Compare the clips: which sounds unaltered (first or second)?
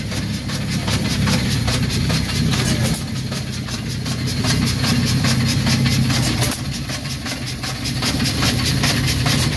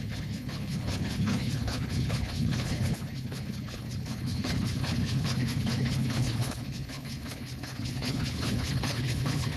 first